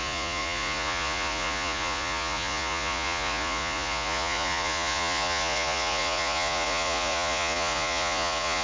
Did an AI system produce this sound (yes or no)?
yes